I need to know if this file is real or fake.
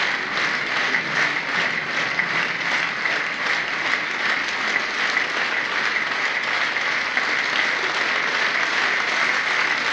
real